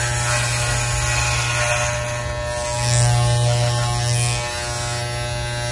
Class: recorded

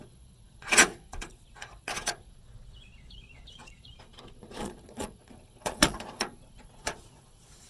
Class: remade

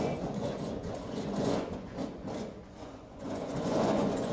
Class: remade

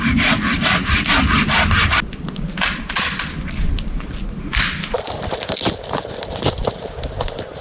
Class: recorded